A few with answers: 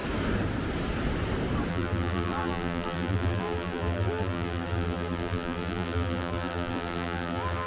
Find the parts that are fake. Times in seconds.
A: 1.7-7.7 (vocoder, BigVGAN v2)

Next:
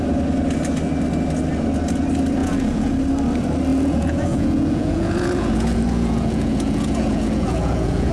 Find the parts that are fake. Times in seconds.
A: 2.4-2.9 (vocoder, Vocos); 3.7-8.1

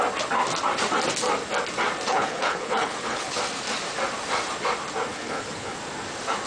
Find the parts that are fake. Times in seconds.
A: 2.1-3.4 (codec, HILCodec); 5.1-5.8